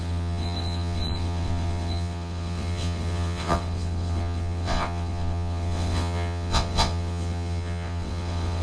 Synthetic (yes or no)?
yes